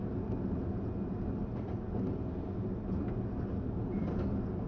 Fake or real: real